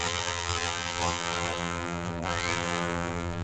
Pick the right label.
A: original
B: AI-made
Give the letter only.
B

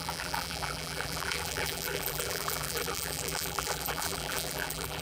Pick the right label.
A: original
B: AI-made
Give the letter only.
B